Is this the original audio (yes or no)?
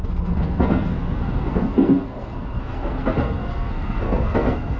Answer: no